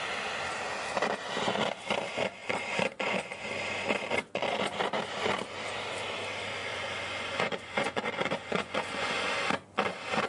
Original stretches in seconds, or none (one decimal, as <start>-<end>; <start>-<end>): 0.0-2.4; 3.3-6.6; 9.3-10.3